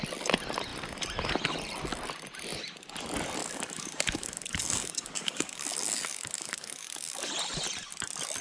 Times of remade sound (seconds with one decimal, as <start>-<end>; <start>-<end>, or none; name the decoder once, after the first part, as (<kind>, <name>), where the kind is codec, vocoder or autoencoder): 3.4-7.3 (codec, DAC)